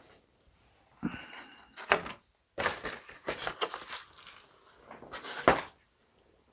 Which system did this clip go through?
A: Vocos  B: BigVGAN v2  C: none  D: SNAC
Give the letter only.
C